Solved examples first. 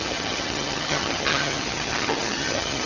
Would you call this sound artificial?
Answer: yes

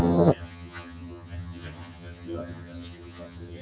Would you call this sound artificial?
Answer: yes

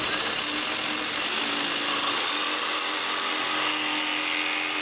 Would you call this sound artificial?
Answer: no